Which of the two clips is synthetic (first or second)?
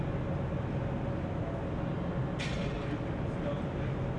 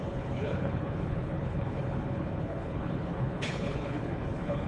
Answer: second